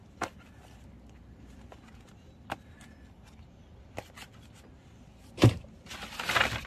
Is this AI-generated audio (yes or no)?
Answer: no